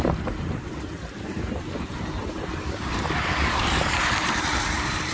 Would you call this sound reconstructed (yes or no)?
yes